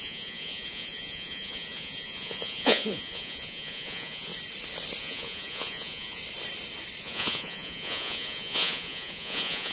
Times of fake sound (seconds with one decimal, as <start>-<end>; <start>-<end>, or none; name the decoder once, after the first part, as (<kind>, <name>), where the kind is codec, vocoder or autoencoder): 0.0-4.3 (vocoder, Vocos); 5.0-6.2; 7.0-9.7